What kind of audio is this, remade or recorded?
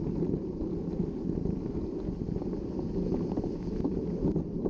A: recorded